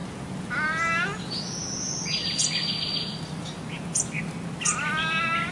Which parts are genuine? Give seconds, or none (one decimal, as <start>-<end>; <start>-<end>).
0.0-5.5